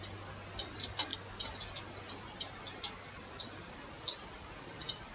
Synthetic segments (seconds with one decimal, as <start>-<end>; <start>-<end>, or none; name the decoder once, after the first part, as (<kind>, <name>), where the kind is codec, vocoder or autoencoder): none